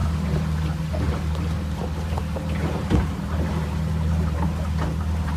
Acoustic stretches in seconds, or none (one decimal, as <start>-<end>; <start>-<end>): 0.0-5.4